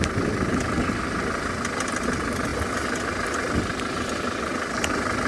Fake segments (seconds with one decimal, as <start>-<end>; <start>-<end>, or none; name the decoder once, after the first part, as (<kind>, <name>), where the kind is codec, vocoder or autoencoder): none